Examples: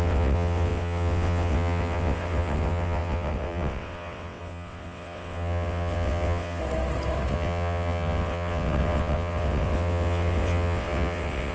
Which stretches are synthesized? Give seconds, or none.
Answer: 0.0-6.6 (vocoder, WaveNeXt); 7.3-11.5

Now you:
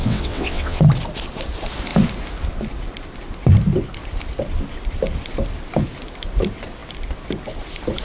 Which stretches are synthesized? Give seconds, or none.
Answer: 0.0-0.8 (vocoder, WaveNeXt)

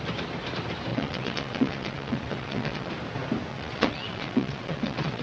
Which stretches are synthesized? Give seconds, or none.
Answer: 0.9-2.9 (vocoder, WaveNeXt); 3.5-5.2

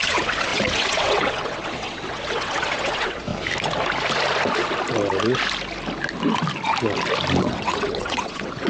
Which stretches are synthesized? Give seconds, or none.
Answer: 0.0-3.3 (vocoder, WaveNeXt); 7.4-8.7

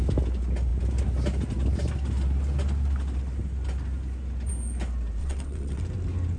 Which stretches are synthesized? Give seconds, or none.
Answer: 5.2-5.8 (vocoder, WaveNeXt)

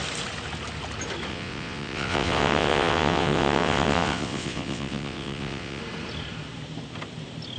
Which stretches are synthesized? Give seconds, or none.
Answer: 1.3-5.8 (vocoder, WaveNeXt)

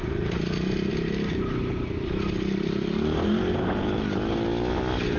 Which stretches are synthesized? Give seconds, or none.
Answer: none

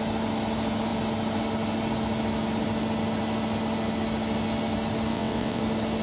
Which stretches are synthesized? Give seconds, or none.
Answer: 5.1-5.6 (vocoder, WaveNeXt)